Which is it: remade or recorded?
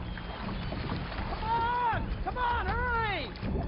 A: recorded